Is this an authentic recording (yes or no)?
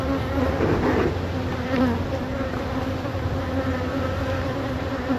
yes